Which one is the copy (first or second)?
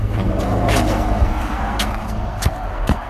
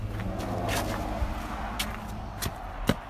first